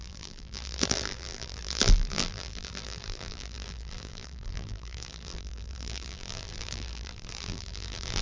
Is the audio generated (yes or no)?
yes